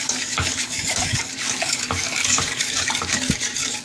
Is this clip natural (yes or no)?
no